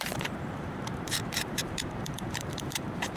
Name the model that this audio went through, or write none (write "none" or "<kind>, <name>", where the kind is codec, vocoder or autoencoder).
vocoder, BigVGAN v2